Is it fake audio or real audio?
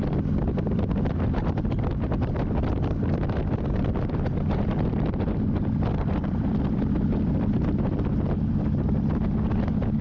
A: fake